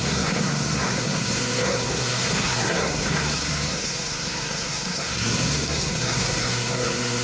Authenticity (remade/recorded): remade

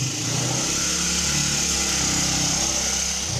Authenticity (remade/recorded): recorded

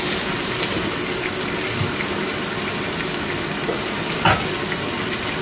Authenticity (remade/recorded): recorded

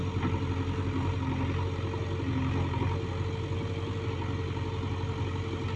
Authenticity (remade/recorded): recorded